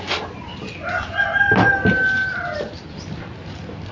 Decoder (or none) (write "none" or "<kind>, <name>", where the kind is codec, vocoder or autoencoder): none